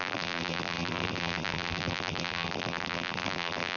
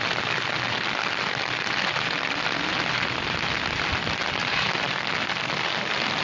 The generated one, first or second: first